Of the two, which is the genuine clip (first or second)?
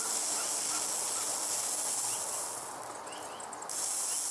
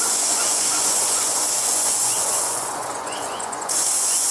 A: first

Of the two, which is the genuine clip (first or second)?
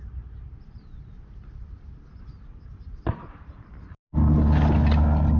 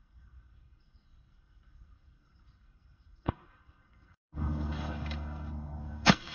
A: first